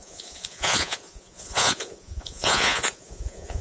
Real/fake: fake